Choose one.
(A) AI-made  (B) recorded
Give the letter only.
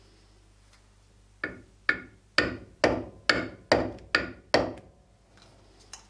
B